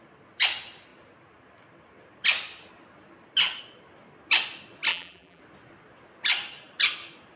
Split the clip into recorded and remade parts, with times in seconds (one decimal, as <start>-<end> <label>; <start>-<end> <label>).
0.0-4.9 recorded; 4.9-5.4 remade; 5.4-7.4 recorded